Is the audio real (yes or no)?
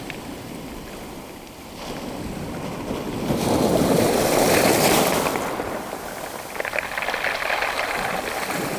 yes